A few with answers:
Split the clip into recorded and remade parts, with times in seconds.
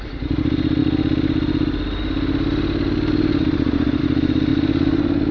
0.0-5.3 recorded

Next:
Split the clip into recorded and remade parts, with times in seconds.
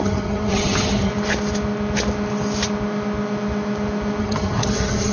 0.0-1.1 remade; 1.1-4.2 recorded; 4.2-5.1 remade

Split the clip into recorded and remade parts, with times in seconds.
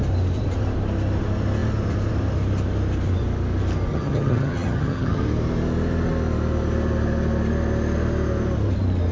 0.0-3.9 recorded; 3.9-5.2 remade; 5.2-9.1 recorded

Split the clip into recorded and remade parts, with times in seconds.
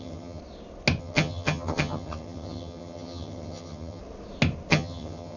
0.0-0.4 remade; 0.4-1.0 recorded; 1.0-4.0 remade; 4.0-4.7 recorded; 4.7-5.4 remade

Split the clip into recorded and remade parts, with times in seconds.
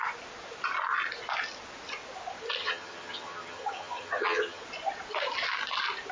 0.0-2.6 recorded; 2.6-4.6 remade; 4.6-6.1 recorded